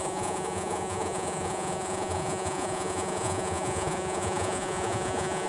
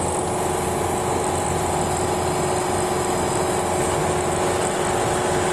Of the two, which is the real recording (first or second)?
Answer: second